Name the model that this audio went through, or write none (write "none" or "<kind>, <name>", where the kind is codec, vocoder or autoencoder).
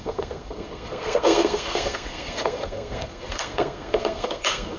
codec, SNAC